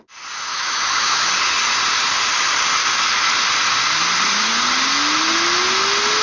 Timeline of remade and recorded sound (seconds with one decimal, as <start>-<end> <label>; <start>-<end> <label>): 0.0-0.5 recorded; 0.5-1.3 remade; 1.3-2.8 recorded; 2.8-3.3 remade; 3.3-6.2 recorded